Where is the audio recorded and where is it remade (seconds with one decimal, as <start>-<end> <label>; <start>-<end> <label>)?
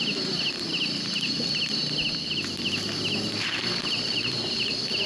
0.0-5.1 recorded